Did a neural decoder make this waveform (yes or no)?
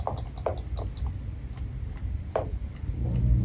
no